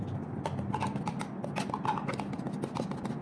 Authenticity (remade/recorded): recorded